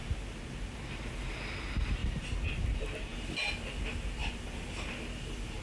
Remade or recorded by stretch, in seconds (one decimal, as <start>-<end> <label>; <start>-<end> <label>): 0.0-5.6 recorded